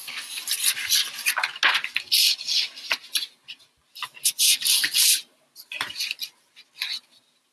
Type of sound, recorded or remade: recorded